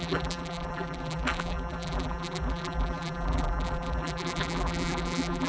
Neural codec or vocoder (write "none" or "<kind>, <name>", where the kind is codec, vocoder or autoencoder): vocoder, BigVGAN v2